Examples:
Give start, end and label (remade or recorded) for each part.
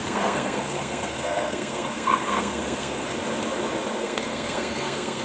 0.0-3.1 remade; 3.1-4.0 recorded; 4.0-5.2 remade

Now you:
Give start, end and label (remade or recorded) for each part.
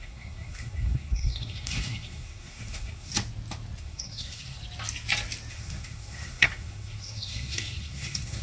0.0-3.1 remade; 3.1-3.8 recorded; 3.8-4.6 remade; 4.6-5.5 recorded; 5.5-8.4 remade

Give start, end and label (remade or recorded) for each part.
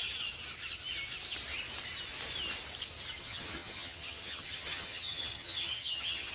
0.0-3.2 recorded; 3.2-6.3 remade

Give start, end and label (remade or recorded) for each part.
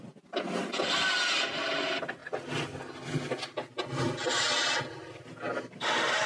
0.0-6.3 recorded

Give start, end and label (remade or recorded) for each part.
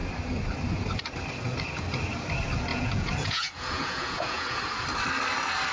0.0-2.7 recorded; 2.7-4.6 remade; 4.6-5.7 recorded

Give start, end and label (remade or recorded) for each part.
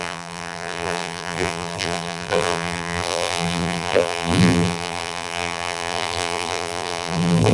0.0-7.5 remade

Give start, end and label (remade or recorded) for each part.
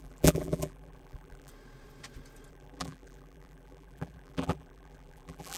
0.0-1.5 remade; 1.5-2.5 recorded; 2.5-5.6 remade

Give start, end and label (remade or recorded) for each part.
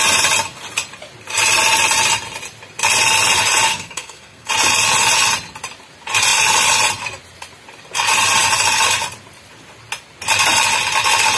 0.0-3.7 recorded; 3.7-4.5 remade; 4.5-11.4 recorded